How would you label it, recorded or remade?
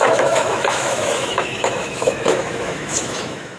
remade